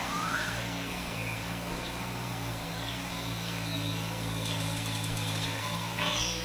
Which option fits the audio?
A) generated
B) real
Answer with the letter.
A